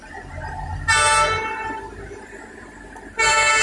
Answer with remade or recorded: recorded